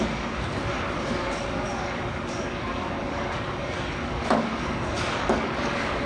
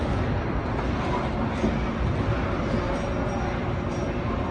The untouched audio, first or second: second